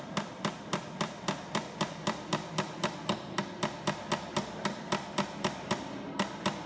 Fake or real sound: real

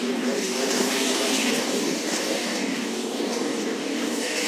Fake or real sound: fake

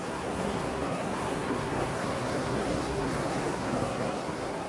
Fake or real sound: fake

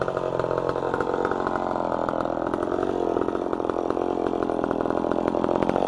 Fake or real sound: real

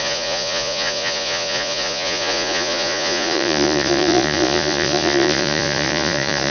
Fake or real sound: fake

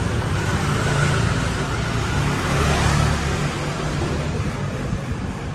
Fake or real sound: real